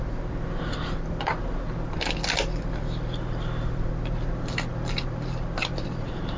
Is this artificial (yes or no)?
yes